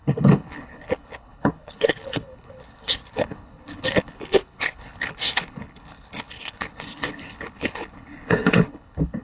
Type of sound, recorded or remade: remade